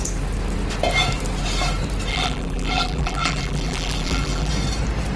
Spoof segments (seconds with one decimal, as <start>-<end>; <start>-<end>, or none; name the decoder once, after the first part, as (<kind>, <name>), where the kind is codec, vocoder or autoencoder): 2.1-4.5 (vocoder, BigVGAN v2)